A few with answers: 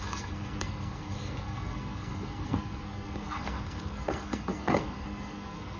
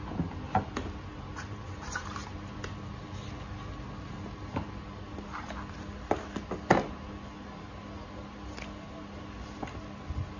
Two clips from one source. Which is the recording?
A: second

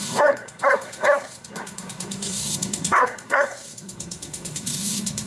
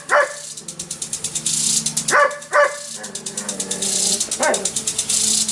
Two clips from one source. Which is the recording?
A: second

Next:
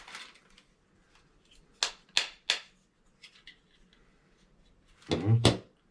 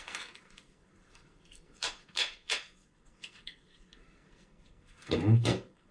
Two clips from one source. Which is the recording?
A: first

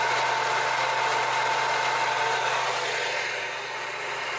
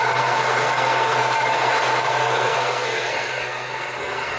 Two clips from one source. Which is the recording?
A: first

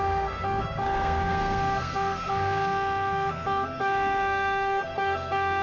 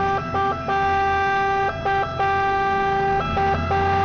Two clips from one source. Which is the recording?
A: second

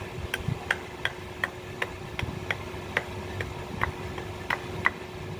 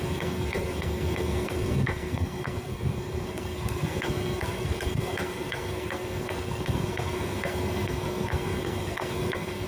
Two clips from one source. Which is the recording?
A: first